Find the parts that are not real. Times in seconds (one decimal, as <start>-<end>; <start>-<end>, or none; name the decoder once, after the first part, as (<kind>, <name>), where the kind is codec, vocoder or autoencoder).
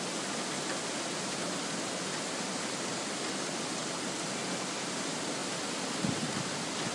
none